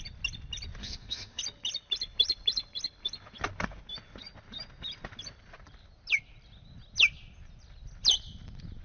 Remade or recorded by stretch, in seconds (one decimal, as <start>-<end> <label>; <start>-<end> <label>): 0.0-0.8 recorded; 0.8-1.4 remade; 1.4-8.8 recorded